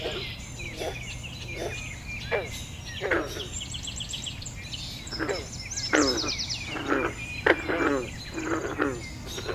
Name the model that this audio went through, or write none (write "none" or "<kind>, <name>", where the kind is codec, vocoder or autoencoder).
none